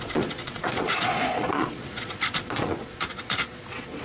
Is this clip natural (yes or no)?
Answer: no